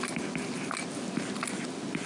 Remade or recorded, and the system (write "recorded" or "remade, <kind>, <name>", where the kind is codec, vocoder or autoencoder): recorded